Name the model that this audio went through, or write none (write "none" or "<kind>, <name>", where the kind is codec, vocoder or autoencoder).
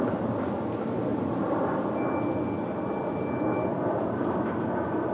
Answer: none